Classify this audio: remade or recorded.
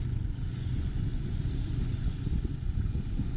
remade